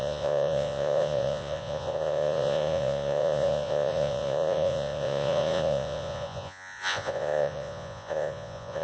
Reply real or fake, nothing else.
fake